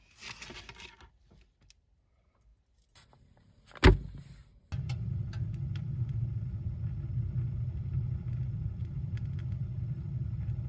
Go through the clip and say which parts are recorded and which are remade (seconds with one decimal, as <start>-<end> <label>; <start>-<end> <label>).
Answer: 0.0-10.7 recorded